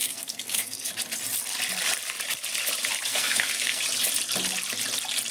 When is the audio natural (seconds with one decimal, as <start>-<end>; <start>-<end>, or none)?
0.9-3.1; 3.8-5.3